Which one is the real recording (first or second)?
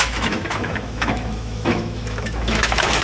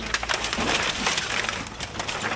second